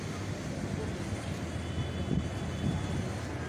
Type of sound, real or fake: real